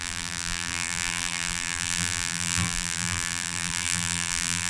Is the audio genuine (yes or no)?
no